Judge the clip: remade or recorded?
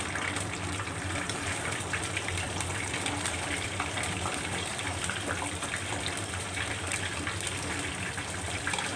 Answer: remade